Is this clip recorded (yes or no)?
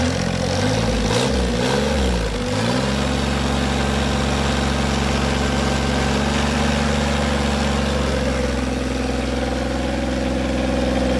yes